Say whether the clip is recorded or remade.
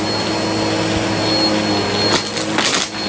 recorded